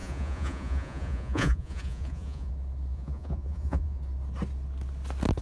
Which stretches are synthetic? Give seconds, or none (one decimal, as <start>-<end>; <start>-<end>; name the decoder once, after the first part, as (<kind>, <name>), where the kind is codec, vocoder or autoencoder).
0.0-2.5 (vocoder, Vocos); 2.9-4.0